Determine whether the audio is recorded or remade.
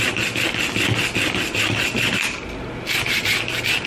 recorded